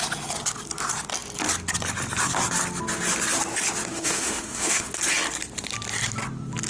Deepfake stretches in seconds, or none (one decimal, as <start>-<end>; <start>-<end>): 3.9-4.9